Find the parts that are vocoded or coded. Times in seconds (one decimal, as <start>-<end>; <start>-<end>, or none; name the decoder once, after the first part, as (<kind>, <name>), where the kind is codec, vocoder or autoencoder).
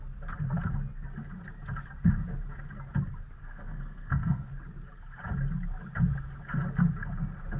3.4-4.5 (codec, SNAC)